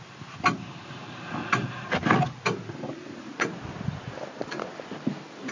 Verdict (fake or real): real